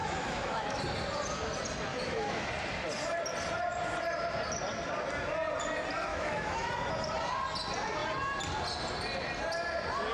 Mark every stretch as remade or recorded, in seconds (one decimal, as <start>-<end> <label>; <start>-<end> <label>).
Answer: 0.0-0.8 remade; 0.8-1.9 recorded; 1.9-2.5 remade; 2.5-6.1 recorded; 6.1-6.7 remade; 6.7-10.1 recorded